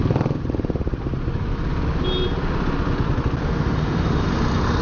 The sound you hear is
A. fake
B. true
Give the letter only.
B